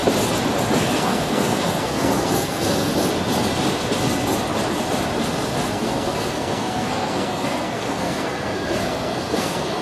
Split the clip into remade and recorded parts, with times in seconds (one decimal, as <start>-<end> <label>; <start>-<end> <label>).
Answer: 0.0-0.8 recorded; 0.8-2.9 remade; 2.9-5.7 recorded; 5.7-9.8 remade